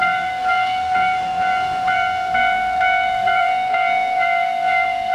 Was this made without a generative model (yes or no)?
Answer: no